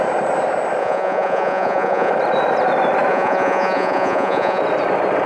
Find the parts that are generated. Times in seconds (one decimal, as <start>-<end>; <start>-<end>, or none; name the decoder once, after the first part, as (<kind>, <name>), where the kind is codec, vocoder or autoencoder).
0.8-2.1 (vocoder, Vocos); 3.1-4.6